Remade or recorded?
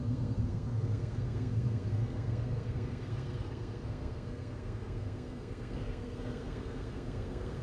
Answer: remade